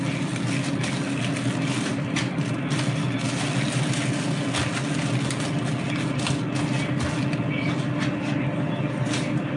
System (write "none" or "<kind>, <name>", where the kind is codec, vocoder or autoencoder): none